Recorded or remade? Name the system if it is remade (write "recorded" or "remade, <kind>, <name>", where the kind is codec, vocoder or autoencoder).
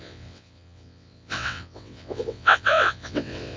remade, vocoder, WaveNeXt